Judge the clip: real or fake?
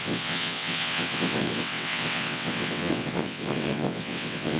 fake